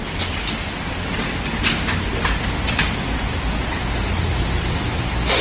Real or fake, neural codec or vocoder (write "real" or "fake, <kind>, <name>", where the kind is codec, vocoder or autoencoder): real